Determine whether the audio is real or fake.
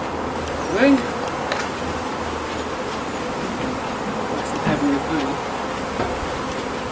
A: real